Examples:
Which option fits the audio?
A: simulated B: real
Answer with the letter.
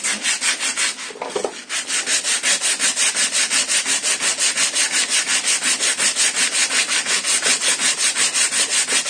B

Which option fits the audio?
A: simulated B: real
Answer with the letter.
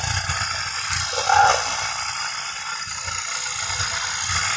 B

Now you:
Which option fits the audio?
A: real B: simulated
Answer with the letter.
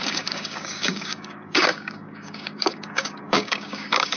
B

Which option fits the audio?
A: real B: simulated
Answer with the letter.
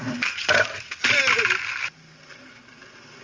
A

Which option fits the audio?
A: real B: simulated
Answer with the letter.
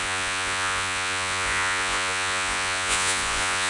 B